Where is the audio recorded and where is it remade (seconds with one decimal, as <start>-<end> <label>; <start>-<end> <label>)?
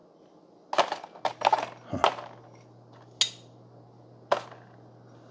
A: 0.0-5.3 recorded